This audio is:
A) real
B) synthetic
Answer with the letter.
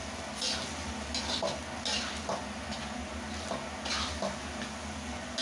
A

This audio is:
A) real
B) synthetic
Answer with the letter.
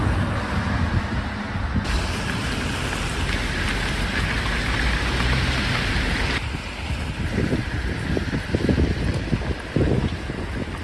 A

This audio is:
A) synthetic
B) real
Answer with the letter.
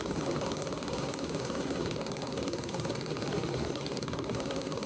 A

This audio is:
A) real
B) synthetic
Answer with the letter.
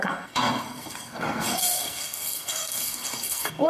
B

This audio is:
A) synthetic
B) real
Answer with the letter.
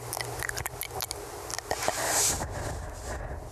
B